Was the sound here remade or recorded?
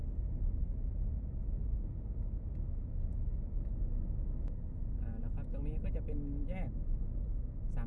recorded